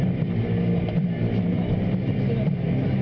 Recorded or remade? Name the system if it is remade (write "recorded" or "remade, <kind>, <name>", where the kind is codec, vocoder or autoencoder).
recorded